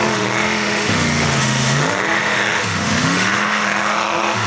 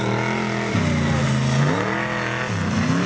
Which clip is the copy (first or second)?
first